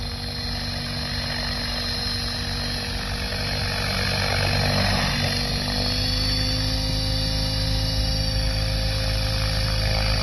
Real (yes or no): yes